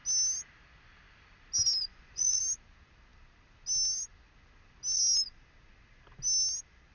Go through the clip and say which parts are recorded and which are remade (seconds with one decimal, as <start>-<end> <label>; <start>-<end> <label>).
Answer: 0.0-1.9 recorded; 1.9-2.4 remade; 2.4-6.9 recorded